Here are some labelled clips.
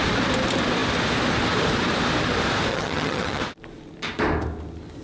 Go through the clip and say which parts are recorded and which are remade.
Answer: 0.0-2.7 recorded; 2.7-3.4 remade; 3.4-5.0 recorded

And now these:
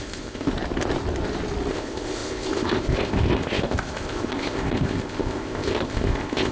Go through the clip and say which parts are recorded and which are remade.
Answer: 0.0-0.5 remade; 0.5-1.7 recorded; 1.7-6.5 remade

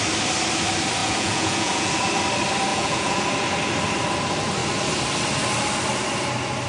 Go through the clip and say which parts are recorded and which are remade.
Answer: 0.0-1.0 recorded; 1.0-1.9 remade; 1.9-2.7 recorded; 2.7-3.2 remade; 3.2-6.7 recorded

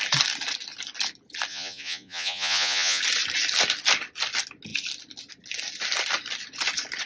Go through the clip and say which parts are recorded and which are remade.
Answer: 0.0-1.5 recorded; 1.5-3.0 remade; 3.0-7.1 recorded

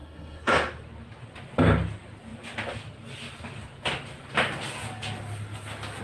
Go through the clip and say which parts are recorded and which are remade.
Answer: 0.0-0.5 remade; 0.5-6.0 recorded

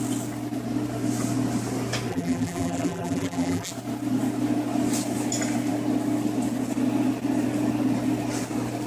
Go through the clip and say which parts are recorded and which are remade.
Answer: 0.0-2.1 recorded; 2.1-3.7 remade; 3.7-8.9 recorded